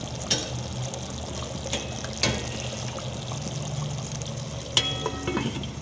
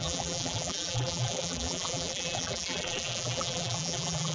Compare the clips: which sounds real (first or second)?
first